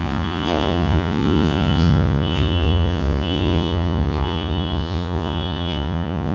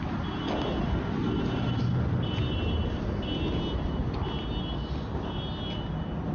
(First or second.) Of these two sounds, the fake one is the first